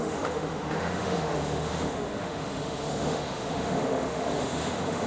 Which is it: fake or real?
fake